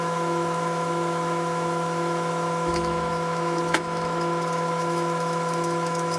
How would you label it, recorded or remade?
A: remade